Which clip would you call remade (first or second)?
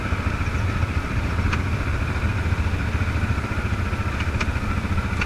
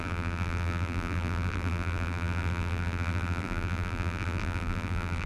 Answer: second